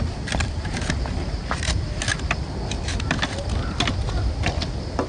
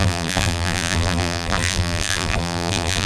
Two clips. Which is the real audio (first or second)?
first